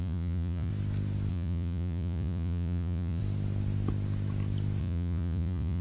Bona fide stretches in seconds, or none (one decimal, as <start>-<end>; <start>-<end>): 0.7-1.3; 3.2-4.8